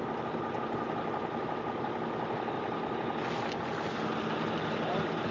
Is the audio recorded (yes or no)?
yes